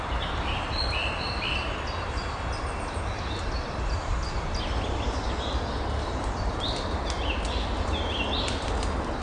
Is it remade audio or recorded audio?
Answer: remade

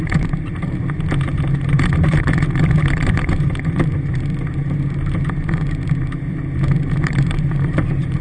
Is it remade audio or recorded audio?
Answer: remade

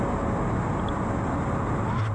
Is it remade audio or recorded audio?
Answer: recorded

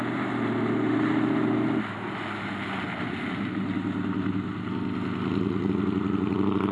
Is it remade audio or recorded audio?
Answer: recorded